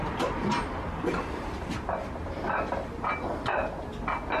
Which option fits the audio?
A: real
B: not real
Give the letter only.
A